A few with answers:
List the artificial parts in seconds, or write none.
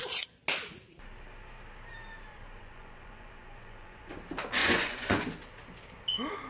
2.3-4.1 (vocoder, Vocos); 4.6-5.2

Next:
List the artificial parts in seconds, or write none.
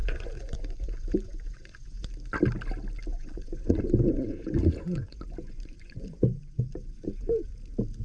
0.0-2.1 (vocoder, Vocos); 3.1-7.5